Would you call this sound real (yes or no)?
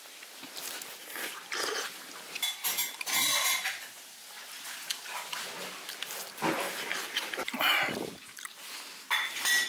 yes